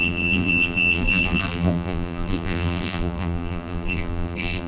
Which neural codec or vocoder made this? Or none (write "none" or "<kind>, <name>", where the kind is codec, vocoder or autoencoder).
vocoder, BigVGAN v2